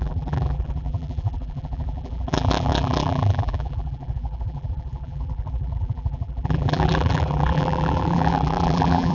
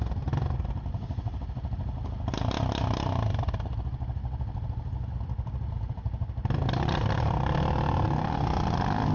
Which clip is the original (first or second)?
second